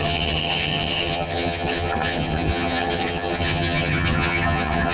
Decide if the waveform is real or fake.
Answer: fake